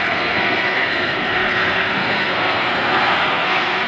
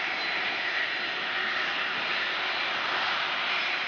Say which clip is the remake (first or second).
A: first